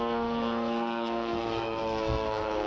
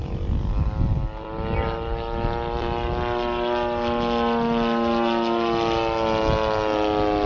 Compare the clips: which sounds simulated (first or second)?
first